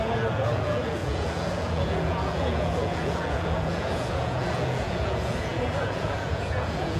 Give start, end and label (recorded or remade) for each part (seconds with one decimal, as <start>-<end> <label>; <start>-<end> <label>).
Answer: 0.0-7.0 remade